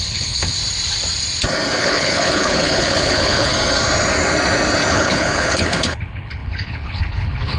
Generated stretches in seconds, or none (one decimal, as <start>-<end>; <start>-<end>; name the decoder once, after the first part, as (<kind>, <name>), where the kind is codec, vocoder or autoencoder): 0.0-0.6 (codec, HILCodec); 1.8-3.5; 4.9-7.6